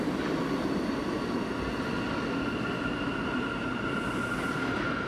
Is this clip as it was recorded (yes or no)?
yes